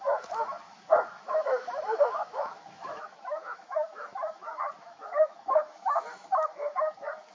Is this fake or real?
fake